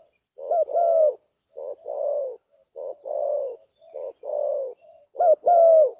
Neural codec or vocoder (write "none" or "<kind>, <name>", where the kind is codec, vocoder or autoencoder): none